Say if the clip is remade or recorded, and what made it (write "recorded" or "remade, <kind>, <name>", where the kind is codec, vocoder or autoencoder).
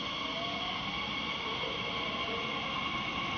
recorded